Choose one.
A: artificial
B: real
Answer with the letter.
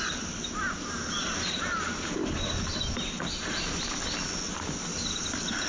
B